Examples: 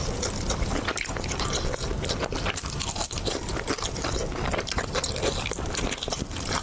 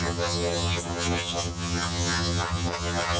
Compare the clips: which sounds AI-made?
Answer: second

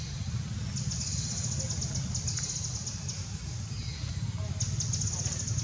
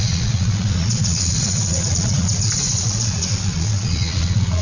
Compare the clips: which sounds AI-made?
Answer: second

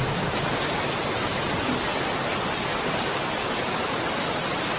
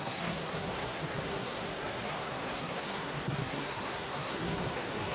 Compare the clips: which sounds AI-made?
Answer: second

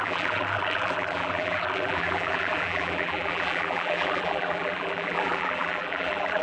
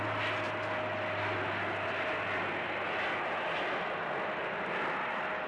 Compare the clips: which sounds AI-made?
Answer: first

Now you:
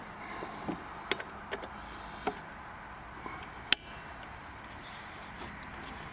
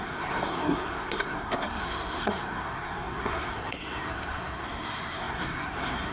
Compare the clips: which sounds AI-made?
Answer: second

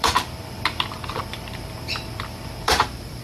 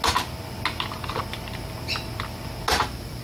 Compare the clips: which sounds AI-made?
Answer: first